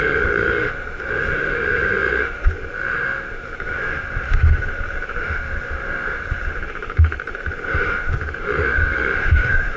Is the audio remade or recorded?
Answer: remade